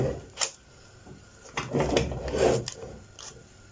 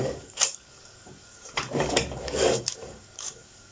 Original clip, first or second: first